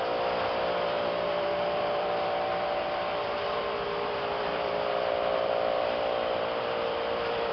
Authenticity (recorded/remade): remade